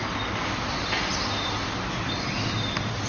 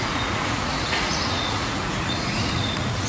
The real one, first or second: first